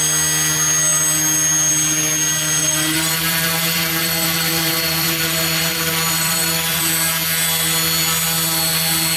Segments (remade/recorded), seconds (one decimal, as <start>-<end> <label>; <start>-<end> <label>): 0.0-2.6 recorded; 2.6-6.8 remade; 6.8-9.2 recorded